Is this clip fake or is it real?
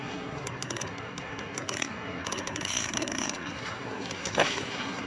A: fake